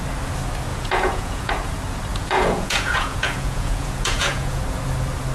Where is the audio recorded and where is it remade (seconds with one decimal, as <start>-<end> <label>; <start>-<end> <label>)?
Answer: 0.0-0.7 recorded; 0.7-1.5 remade; 1.5-2.1 recorded; 2.1-4.6 remade; 4.6-5.3 recorded